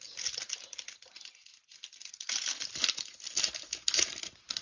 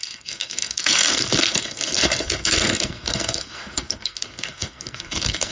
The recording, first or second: first